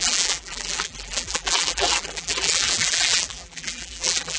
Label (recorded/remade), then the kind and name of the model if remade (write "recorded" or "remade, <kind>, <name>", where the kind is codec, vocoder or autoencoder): remade, vocoder, BigVGAN v2